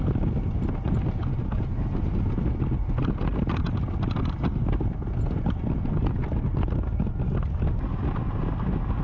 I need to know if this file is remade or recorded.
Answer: recorded